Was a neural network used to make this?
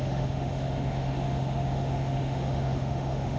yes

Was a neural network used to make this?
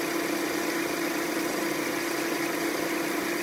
no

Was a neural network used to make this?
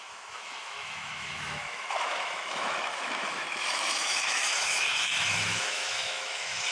yes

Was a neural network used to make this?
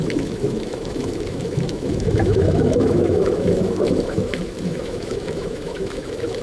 yes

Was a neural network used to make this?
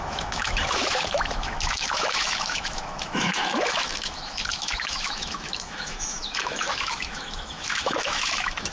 yes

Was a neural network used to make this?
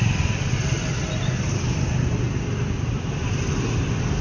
no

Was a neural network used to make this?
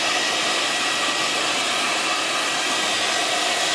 no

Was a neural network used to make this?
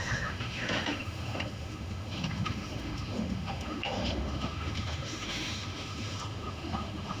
yes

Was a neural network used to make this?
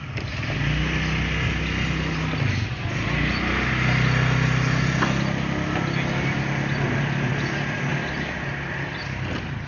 no